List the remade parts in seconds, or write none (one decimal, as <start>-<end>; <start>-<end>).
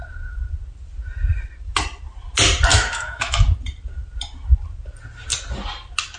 2.7-3.4